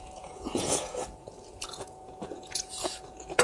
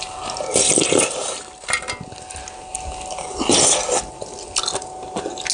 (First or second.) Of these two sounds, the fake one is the first